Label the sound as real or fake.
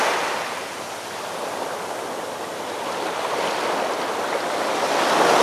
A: real